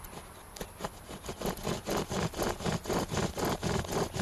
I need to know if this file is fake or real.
real